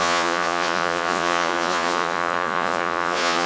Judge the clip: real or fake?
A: fake